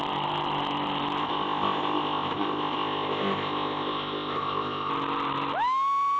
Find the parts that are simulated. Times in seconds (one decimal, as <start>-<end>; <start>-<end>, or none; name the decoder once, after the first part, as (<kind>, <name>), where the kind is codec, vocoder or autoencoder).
1.2-4.9 (codec, ZipCodec)